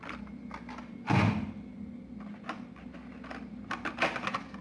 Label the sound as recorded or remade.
recorded